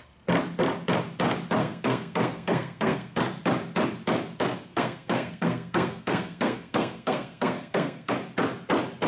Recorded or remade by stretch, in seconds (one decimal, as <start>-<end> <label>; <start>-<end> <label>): 0.0-1.6 recorded; 1.6-3.2 remade; 3.2-4.7 recorded; 4.7-8.1 remade; 8.1-9.1 recorded